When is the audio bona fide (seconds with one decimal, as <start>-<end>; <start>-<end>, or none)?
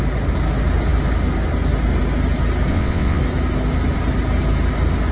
0.0-2.7; 3.2-5.1